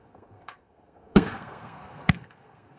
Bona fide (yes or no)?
no